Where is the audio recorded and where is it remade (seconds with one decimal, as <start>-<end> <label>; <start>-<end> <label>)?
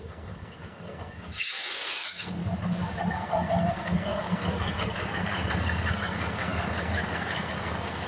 0.0-2.4 remade; 2.4-3.1 recorded; 3.1-8.1 remade